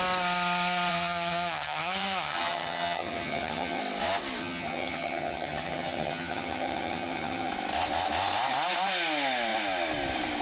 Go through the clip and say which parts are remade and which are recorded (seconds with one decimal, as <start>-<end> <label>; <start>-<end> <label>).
0.0-0.9 recorded; 0.9-3.8 remade; 3.8-4.4 recorded; 4.4-7.5 remade; 7.5-10.4 recorded